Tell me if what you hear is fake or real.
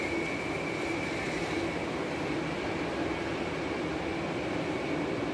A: real